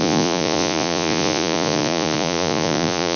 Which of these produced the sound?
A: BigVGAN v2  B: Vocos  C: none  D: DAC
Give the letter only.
B